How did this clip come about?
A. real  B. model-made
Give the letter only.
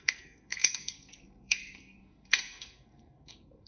B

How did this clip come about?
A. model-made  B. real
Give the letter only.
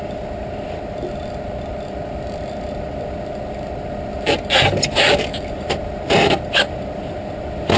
B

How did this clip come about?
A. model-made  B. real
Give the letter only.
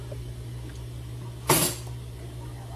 B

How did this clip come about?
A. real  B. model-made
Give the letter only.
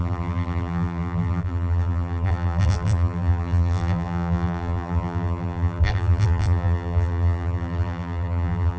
B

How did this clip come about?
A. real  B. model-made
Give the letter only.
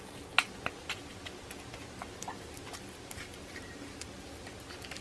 A